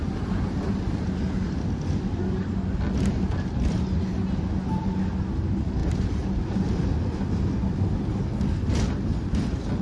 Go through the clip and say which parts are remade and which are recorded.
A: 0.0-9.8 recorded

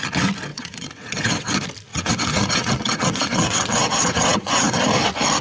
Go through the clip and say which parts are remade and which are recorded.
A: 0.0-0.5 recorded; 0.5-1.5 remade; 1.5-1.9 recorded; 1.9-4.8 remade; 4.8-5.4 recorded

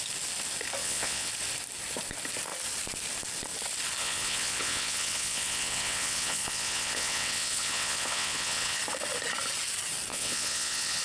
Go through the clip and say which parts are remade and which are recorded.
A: 0.0-0.8 recorded; 0.8-1.3 remade; 1.3-4.0 recorded; 4.0-8.8 remade; 8.8-10.1 recorded; 10.1-11.0 remade